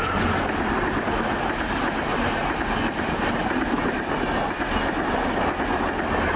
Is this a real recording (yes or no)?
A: yes